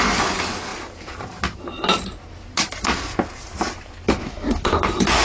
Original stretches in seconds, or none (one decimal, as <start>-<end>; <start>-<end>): 0.0-4.2; 4.8-5.2